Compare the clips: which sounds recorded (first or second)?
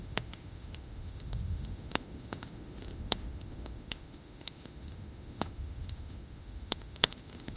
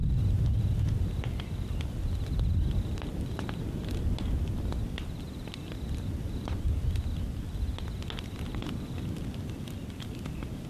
second